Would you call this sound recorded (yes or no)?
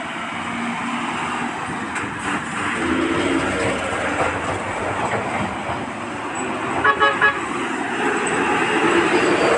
yes